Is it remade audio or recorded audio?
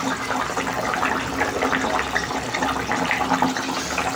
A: recorded